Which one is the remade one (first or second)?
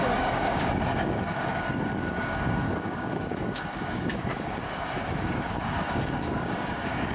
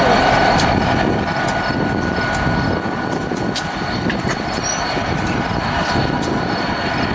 first